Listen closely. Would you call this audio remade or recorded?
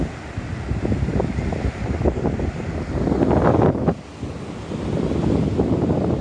recorded